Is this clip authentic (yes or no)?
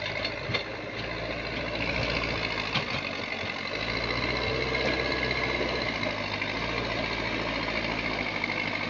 yes